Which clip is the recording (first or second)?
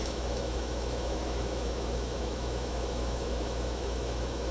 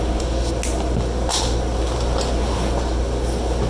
second